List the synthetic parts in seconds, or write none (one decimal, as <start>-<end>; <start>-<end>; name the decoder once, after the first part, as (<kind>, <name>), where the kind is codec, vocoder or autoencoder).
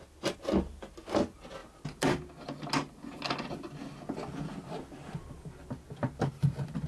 none